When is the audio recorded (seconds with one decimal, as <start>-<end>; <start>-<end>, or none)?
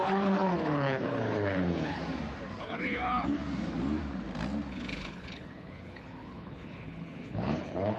2.0-2.6; 3.4-4.7